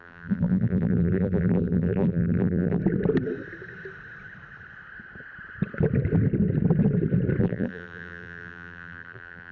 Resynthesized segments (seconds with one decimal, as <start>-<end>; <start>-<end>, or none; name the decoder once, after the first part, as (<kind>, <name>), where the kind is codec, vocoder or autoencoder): 0.0-2.8 (vocoder, BigVGAN v2); 7.4-9.5